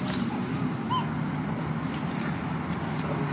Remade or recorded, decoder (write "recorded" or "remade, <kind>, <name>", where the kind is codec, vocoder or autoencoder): recorded